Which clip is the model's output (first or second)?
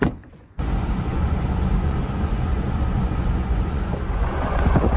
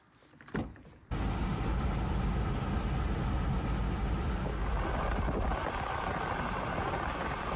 first